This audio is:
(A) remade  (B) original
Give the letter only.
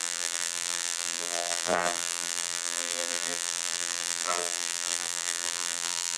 A